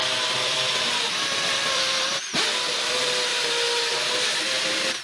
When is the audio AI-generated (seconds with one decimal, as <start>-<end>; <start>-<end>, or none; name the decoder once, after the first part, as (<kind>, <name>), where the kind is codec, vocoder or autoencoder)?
0.0-3.3 (vocoder, BigVGAN v2); 4.4-5.0